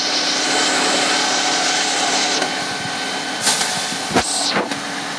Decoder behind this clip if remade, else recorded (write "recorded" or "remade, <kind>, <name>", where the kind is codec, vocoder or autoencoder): recorded